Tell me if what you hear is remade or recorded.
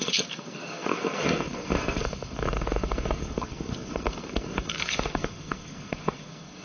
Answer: remade